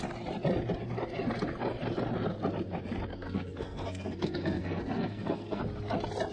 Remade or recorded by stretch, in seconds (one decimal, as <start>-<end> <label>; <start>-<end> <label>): 0.0-3.1 recorded; 3.1-5.6 remade; 5.6-6.3 recorded